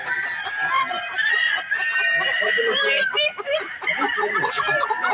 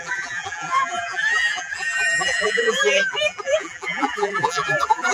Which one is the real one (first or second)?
first